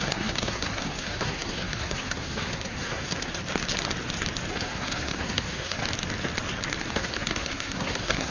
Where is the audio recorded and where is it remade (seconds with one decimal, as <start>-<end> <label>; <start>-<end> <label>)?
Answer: 0.0-3.3 remade; 3.3-4.5 recorded; 4.5-5.8 remade; 5.8-6.9 recorded; 6.9-8.3 remade